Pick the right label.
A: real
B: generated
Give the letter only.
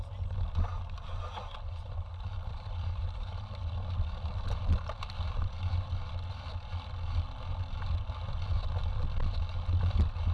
A